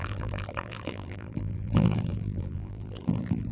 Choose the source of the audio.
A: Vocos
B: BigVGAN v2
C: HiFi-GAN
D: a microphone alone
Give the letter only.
B